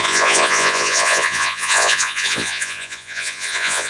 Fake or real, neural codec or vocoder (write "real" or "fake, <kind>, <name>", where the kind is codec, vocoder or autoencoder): fake, vocoder, Vocos